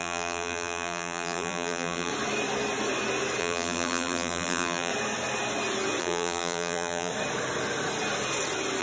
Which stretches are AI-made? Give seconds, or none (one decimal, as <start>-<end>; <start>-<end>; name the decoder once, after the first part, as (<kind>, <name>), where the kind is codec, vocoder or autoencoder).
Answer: 0.0-2.1 (vocoder, BigVGAN v2); 3.4-4.9; 6.0-7.1